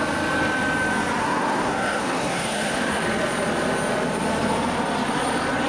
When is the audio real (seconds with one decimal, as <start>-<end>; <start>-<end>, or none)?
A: 0.0-1.2; 3.0-5.7